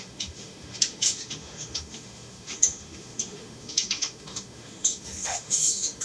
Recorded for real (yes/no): no